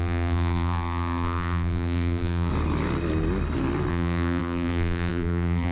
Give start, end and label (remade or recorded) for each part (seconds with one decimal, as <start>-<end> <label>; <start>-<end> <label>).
0.0-2.5 remade; 2.5-3.9 recorded; 3.9-5.7 remade